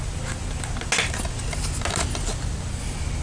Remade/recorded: recorded